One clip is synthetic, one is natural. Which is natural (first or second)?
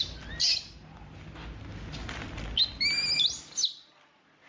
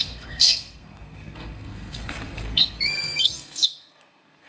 first